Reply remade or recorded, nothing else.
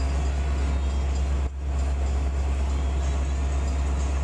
recorded